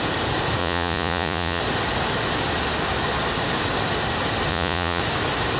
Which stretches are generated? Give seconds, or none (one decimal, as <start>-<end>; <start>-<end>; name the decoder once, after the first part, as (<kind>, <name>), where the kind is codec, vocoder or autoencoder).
0.6-1.6 (vocoder, Vocos); 4.5-5.0